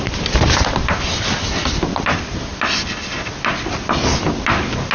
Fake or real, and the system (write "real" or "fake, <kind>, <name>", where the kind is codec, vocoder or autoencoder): real